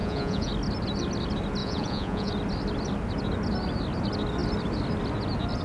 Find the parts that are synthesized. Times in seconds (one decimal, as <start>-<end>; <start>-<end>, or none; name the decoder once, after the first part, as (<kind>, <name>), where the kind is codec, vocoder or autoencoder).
0.0-0.5 (vocoder, Vocos); 1.6-2.3